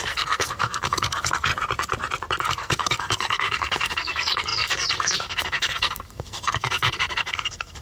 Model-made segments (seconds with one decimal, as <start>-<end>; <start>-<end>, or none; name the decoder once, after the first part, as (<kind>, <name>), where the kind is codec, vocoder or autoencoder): 0.0-1.5 (codec, SNAC); 2.5-7.8